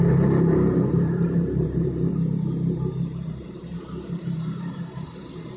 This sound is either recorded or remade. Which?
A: remade